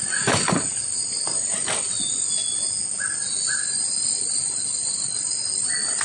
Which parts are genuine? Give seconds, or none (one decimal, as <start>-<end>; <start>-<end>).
0.0-6.0